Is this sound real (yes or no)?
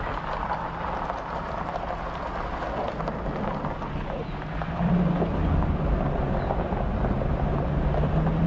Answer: yes